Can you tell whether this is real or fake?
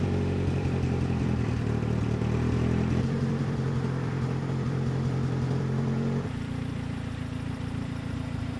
fake